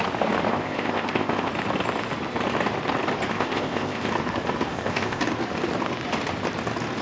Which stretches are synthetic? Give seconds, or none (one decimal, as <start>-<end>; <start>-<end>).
0.5-1.5; 3.3-4.1; 4.7-5.2